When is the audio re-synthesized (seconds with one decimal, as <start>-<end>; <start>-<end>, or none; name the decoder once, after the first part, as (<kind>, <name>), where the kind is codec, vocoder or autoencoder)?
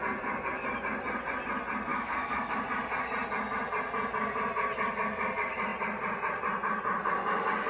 1.9-2.6 (autoencoder, DAC-VAE)